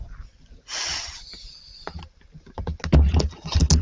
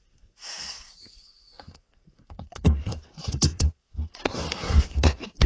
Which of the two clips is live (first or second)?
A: first